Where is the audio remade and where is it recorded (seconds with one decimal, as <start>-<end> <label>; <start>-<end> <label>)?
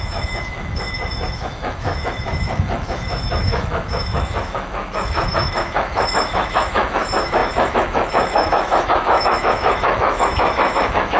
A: 0.0-11.2 remade